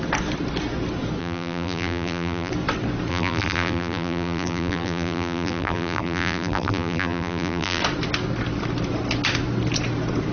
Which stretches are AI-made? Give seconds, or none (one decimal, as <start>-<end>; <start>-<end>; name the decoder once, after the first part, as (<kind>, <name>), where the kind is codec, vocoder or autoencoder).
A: 1.2-2.5 (vocoder, BigVGAN v2); 3.1-7.8